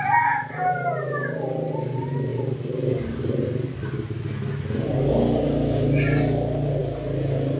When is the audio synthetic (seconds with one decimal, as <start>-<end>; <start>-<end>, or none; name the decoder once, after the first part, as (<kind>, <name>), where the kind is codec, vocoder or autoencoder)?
none